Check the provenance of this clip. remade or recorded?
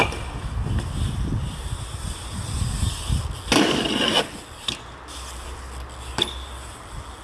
recorded